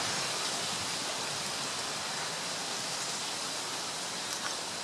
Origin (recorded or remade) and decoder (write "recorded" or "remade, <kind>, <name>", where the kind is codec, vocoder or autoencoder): recorded